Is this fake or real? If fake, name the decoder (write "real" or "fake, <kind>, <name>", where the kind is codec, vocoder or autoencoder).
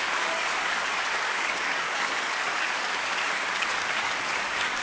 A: fake, codec, DAC